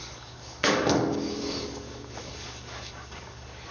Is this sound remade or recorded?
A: remade